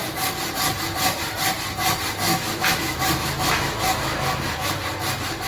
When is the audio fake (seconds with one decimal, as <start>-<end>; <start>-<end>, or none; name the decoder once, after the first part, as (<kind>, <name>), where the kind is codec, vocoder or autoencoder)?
2.3-4.7 (autoencoder, DAC-VAE)